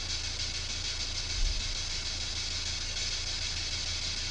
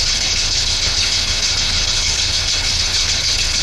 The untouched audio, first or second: first